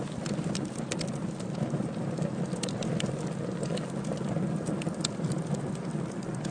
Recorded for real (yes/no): yes